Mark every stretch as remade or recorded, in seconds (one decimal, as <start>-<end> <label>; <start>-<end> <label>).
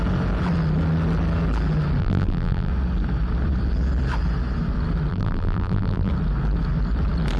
0.0-2.0 recorded; 2.0-2.7 remade; 2.7-5.1 recorded; 5.1-6.1 remade; 6.1-7.4 recorded